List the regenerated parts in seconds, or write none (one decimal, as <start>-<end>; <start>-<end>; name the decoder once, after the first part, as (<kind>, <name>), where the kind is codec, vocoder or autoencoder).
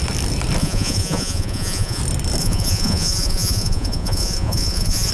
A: 0.6-2.0 (vocoder, Vocos); 2.4-5.1